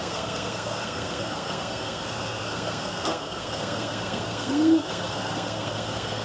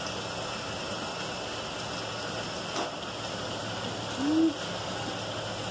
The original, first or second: second